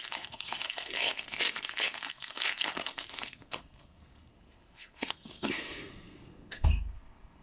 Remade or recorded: remade